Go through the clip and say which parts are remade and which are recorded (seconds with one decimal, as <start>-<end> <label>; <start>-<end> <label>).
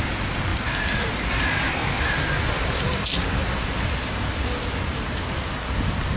0.0-0.5 recorded; 0.5-1.3 remade; 1.3-6.2 recorded